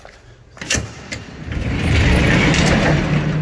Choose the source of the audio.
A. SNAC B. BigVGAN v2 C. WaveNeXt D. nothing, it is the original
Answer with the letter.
D